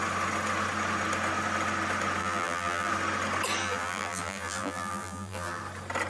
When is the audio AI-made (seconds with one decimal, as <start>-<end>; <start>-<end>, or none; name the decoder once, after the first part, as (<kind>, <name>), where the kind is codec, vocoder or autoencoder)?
2.2-2.9 (vocoder, BigVGAN v2); 3.6-5.6

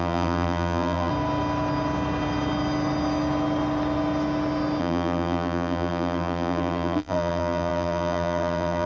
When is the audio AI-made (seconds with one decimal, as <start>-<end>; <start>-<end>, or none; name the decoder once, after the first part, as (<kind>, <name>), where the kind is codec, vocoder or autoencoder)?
0.0-1.1 (vocoder, BigVGAN v2); 4.8-8.9